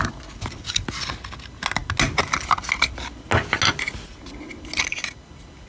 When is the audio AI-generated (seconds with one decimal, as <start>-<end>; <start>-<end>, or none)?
none